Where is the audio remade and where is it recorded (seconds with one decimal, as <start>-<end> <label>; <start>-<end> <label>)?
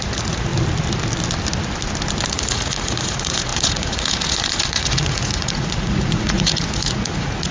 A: 0.0-0.5 remade; 0.5-2.3 recorded; 2.3-7.5 remade